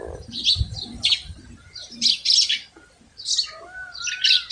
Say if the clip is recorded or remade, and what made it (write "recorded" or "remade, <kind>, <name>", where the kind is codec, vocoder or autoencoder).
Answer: recorded